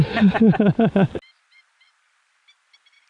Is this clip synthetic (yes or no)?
no